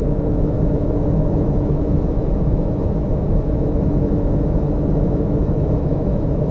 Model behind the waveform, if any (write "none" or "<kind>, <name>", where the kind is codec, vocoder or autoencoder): autoencoder, DAC-VAE